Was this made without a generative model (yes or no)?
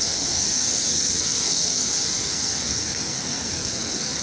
no